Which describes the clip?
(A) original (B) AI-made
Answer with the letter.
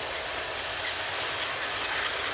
A